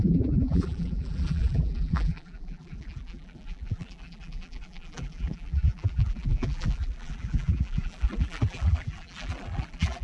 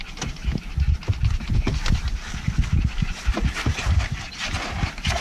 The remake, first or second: first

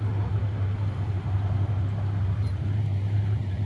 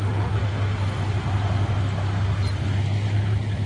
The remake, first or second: first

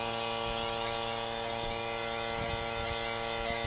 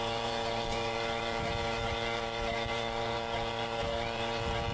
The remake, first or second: second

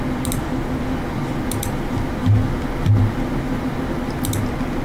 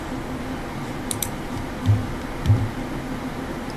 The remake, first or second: second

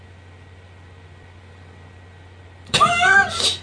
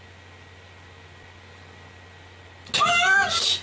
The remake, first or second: first